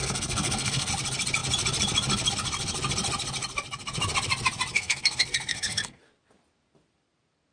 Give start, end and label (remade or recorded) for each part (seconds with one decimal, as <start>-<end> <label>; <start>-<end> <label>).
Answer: 0.0-0.9 remade; 0.9-4.7 recorded; 4.7-6.0 remade; 6.0-7.5 recorded